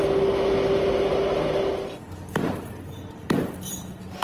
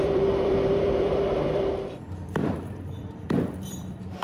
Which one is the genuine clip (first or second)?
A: first